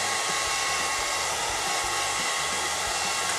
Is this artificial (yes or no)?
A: no